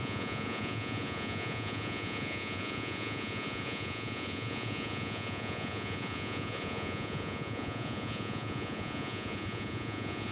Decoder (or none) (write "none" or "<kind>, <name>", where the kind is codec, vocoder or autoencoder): vocoder, Vocos